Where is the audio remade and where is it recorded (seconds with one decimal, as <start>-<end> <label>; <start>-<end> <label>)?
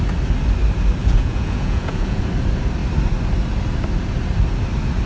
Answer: 0.0-1.0 recorded; 1.0-2.2 remade; 2.2-5.1 recorded